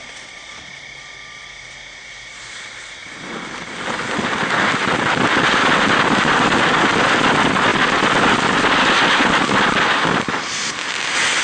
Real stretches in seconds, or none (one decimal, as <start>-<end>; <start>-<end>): 0.0-11.4